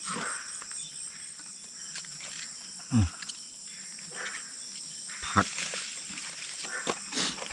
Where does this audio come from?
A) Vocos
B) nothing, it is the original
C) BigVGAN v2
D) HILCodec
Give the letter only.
B